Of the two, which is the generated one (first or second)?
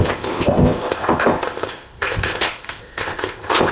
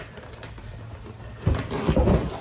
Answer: first